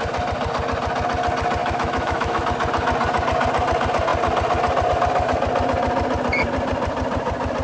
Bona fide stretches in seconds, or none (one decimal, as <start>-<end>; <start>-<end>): 0.0-1.6; 2.4-7.6